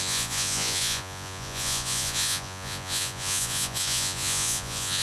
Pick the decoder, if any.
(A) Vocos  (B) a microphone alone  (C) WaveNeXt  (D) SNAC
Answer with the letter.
A